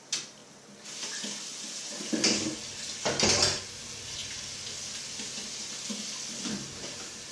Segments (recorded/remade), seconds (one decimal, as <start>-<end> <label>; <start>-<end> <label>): 0.0-7.3 recorded